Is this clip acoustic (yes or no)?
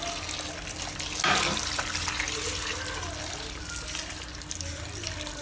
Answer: yes